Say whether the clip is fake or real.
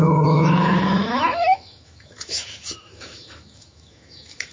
fake